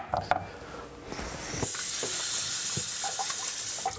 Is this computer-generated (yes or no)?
no